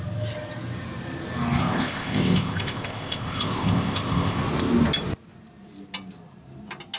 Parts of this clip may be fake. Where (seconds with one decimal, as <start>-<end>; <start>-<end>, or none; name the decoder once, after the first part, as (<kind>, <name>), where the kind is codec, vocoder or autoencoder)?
1.6-4.4 (codec, ZipCodec)